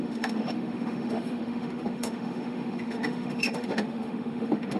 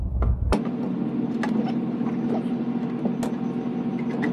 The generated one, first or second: first